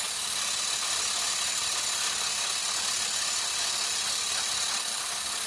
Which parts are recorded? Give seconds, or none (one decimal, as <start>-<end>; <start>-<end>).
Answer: 0.0-5.5

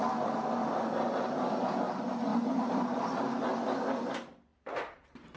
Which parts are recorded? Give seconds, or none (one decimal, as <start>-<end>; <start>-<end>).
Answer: 0.0-0.6; 1.8-2.3; 3.2-4.5; 5.0-5.4

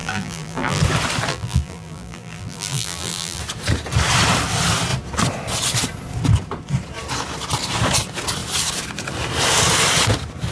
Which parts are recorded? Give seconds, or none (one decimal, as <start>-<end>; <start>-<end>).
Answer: 0.8-1.3; 3.4-10.5

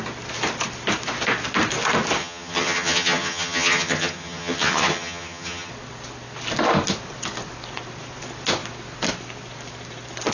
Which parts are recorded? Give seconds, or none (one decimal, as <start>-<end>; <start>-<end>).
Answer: 0.0-2.2; 5.7-10.3